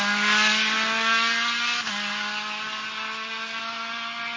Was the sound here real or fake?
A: real